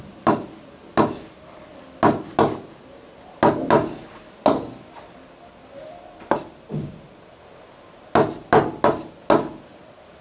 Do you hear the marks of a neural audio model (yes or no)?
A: no